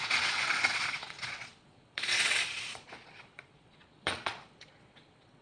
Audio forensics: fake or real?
fake